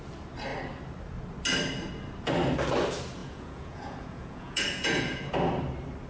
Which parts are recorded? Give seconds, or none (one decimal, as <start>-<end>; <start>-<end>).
0.0-3.2; 5.3-6.1